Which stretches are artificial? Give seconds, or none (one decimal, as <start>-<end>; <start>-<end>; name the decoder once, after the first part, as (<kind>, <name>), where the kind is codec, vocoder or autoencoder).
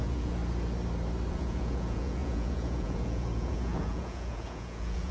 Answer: 0.0-0.4 (vocoder, Vocos); 1.3-5.1